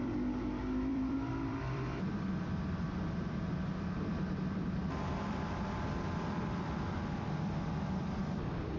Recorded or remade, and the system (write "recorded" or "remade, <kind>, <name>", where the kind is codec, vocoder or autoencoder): remade, vocoder, BigVGAN v2